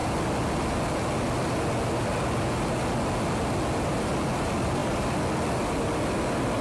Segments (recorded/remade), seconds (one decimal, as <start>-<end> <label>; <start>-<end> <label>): 0.0-6.6 recorded